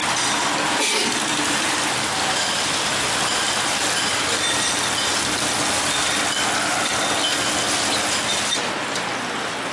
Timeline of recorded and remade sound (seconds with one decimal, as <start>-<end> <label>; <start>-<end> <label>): 0.0-9.7 recorded